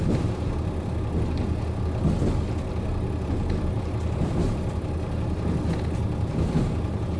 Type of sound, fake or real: real